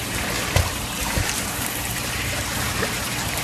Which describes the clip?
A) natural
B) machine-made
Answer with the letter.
B